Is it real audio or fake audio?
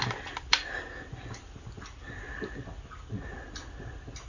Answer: real